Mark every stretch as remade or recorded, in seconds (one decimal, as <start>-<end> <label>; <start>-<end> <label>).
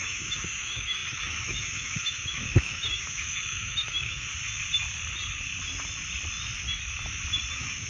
0.0-4.3 remade; 4.3-7.5 recorded; 7.5-7.9 remade